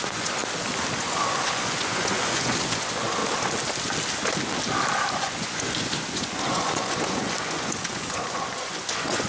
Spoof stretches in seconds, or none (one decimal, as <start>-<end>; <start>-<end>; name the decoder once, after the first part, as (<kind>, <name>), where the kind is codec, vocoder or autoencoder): 0.0-0.4 (vocoder, Vocos); 1.0-3.2; 5.1-9.3

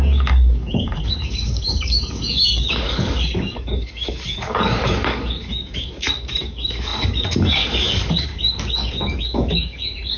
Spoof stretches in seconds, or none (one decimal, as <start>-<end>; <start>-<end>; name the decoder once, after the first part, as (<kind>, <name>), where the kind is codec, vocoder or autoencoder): 0.0-10.2 (codec, DAC)

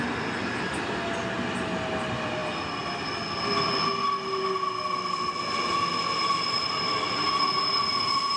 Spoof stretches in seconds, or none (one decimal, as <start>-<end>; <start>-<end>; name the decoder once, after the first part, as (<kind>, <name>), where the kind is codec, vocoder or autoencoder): none

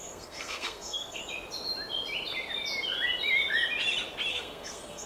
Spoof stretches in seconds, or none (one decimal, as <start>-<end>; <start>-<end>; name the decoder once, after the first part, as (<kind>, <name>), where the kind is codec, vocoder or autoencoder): 0.0-1.2 (codec, SNAC); 4.3-5.1

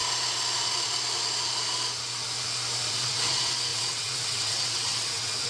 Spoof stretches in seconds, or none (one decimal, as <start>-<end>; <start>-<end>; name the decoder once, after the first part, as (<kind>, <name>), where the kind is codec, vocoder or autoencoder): 2.9-5.5 (vocoder, WaveNeXt)

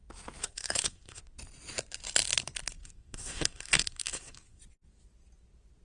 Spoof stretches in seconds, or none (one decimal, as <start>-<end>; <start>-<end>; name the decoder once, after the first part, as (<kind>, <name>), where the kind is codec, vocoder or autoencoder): 0.4-1.2 (codec, SNAC); 2.8-4.6

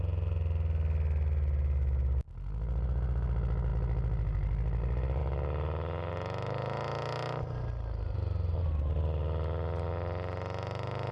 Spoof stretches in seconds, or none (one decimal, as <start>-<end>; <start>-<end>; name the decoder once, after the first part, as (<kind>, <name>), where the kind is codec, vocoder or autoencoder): 3.7-4.8 (vocoder, BigVGAN v2)